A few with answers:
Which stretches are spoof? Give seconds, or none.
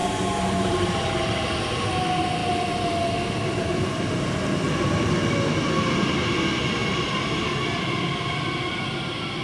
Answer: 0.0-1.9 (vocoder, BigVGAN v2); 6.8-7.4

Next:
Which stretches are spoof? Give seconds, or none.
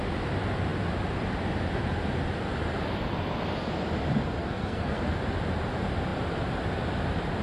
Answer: 4.4-5.1 (codec, SNAC)